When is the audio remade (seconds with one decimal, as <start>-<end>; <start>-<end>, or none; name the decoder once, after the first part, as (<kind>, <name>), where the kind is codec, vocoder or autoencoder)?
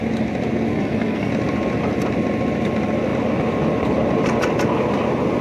0.7-1.3 (codec, SNAC)